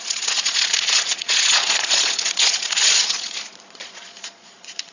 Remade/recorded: remade